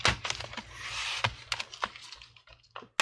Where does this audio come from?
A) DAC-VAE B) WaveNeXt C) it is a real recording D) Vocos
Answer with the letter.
C